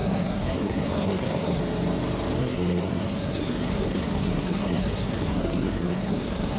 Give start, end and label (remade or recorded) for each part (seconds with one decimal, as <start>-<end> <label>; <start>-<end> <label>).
0.0-1.6 remade; 1.6-2.4 recorded; 2.4-6.6 remade